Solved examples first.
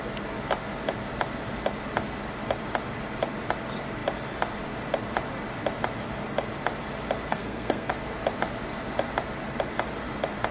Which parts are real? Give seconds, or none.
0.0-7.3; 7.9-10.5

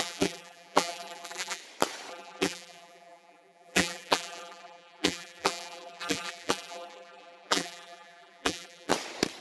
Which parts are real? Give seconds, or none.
1.6-2.1; 8.9-9.4

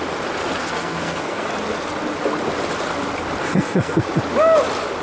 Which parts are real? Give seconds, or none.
0.0-0.6; 1.5-3.4; 4.1-5.0

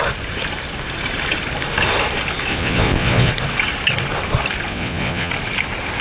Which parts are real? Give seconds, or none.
0.0-2.5; 3.3-4.7; 5.3-6.0

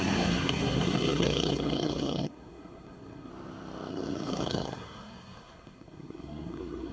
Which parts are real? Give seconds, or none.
3.3-3.9

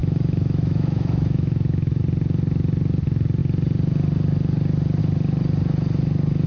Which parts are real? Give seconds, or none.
2.0-6.5

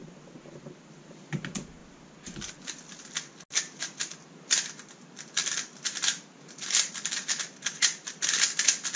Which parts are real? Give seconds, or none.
0.0-9.0